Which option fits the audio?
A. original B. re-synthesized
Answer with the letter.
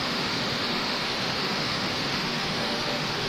B